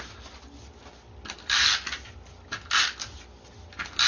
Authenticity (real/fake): real